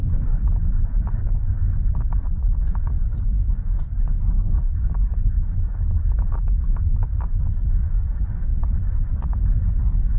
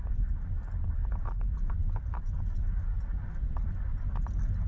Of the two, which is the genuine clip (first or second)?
second